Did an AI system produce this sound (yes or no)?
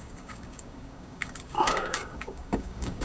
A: yes